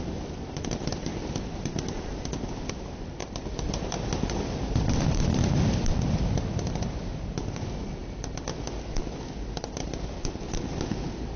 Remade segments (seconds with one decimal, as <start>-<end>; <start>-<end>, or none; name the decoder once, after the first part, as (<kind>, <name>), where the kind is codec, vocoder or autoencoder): 0.0-3.2 (vocoder, BigVGAN v2); 4.6-8.0